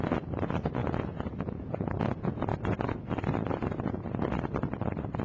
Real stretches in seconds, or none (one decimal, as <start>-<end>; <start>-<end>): 0.0-0.8; 1.8-2.5; 3.1-5.2